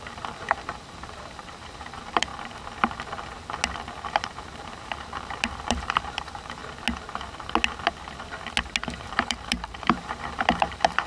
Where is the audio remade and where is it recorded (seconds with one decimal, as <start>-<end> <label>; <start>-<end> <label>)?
0.0-2.3 remade; 2.3-4.1 recorded; 4.1-6.6 remade; 6.6-8.9 recorded; 8.9-11.1 remade